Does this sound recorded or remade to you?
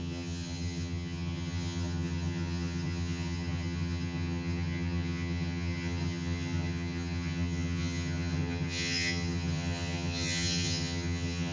remade